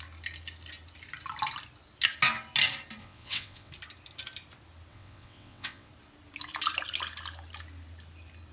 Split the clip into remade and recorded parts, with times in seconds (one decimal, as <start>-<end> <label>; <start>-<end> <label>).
0.0-3.0 recorded; 3.0-3.7 remade; 3.7-4.9 recorded; 4.9-5.9 remade; 5.9-8.5 recorded